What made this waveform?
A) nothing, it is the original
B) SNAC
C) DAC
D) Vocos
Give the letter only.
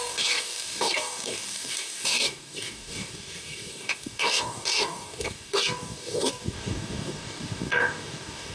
C